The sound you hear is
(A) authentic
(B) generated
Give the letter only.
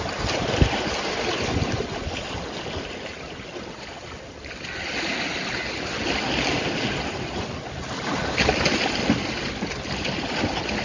A